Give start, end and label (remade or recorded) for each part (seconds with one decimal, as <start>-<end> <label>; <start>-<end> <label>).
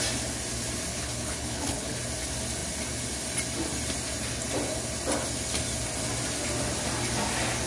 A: 0.0-0.9 recorded; 0.9-2.0 remade; 2.0-7.7 recorded